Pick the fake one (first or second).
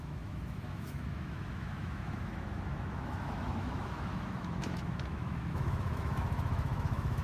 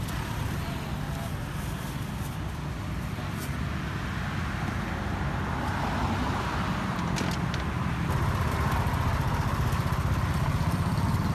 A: first